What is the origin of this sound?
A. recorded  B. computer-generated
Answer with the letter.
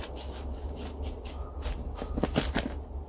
A